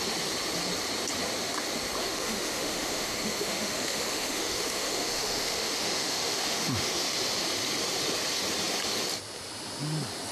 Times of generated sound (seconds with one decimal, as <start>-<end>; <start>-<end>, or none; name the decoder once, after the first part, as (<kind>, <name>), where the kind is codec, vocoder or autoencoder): 2.0-7.0 (autoencoder, DAC-VAE)